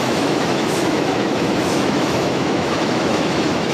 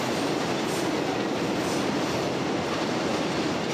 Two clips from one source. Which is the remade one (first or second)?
first